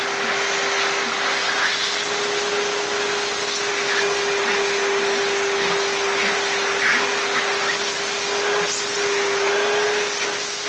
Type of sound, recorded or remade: recorded